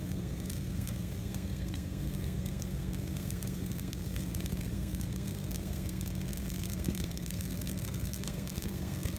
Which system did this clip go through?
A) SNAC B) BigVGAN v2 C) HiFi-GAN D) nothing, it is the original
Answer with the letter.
A